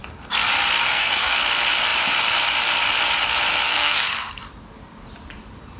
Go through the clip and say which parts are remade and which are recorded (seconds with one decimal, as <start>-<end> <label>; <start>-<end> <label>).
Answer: 0.0-0.8 recorded; 0.8-1.4 remade; 1.4-3.5 recorded; 3.5-4.3 remade; 4.3-5.8 recorded